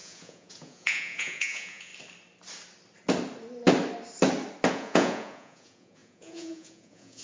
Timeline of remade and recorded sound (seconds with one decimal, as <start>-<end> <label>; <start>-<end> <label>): 0.0-1.9 remade; 1.9-4.7 recorded; 4.7-7.2 remade